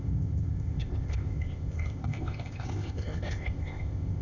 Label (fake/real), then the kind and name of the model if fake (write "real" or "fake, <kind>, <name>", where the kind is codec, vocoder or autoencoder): fake, codec, ZipCodec